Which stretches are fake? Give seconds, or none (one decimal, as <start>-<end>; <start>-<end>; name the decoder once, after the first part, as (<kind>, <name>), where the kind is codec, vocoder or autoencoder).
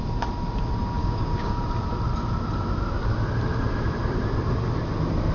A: 1.0-1.5 (codec, DAC)